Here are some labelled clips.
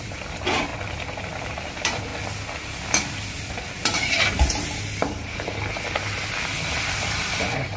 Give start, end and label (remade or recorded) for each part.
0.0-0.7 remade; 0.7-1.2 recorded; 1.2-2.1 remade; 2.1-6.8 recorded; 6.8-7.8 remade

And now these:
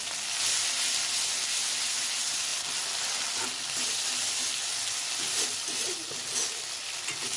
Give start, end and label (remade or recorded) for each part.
0.0-7.4 recorded

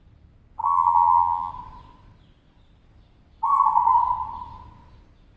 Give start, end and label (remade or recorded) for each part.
0.0-0.6 recorded; 0.6-1.5 remade; 1.5-5.4 recorded

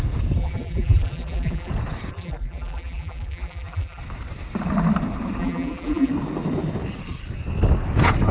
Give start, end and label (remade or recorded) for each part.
0.0-0.4 recorded; 0.4-1.7 remade; 1.7-2.1 recorded; 2.1-4.0 remade; 4.0-5.4 recorded; 5.4-6.1 remade; 6.1-8.3 recorded

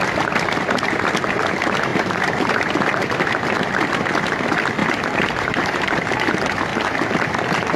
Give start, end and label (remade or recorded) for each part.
0.0-1.9 recorded; 1.9-2.7 remade; 2.7-4.8 recorded; 4.8-6.3 remade; 6.3-7.8 recorded

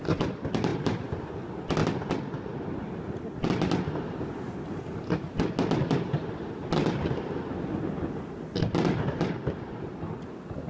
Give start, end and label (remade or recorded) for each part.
0.0-0.7 recorded; 0.7-1.3 remade; 1.3-10.7 recorded

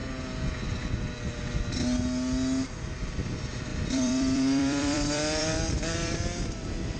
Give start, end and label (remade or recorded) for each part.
0.0-3.7 recorded; 3.7-7.0 remade